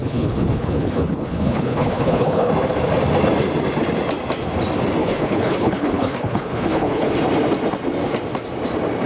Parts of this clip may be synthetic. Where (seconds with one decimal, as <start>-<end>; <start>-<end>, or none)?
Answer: 0.0-2.5; 5.0-7.1